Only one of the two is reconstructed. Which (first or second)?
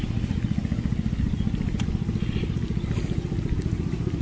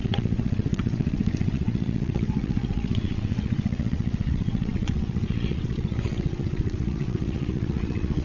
second